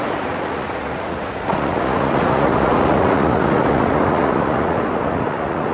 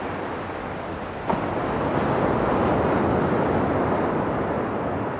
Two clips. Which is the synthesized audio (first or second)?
first